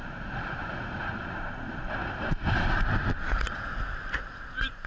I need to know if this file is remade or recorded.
remade